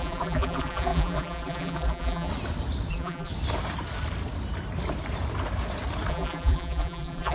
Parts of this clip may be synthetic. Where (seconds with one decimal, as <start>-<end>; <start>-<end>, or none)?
0.0-2.3; 2.9-3.3; 6.1-7.3